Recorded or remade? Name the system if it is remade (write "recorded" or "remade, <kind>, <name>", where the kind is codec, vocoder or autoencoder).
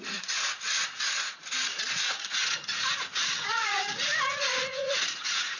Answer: remade, vocoder, Vocos